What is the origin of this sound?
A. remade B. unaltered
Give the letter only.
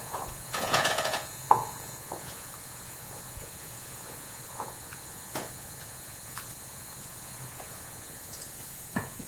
A